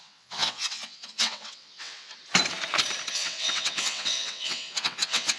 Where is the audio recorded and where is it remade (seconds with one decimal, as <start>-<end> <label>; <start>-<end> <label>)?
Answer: 0.0-2.1 remade; 2.1-3.1 recorded; 3.1-5.4 remade